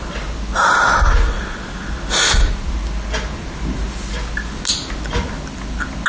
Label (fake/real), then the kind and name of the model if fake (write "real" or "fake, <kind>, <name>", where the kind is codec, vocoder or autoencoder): real